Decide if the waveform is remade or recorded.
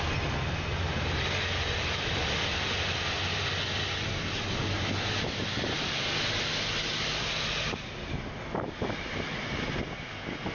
recorded